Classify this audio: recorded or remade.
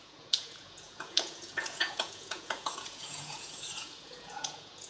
remade